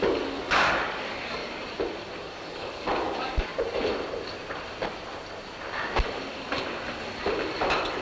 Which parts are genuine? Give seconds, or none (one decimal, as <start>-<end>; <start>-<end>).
1.4-2.2; 3.5-8.0